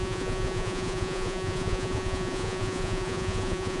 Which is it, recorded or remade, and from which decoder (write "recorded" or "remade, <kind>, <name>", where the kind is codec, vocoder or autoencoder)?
remade, vocoder, Vocos